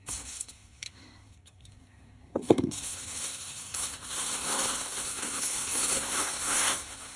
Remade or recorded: remade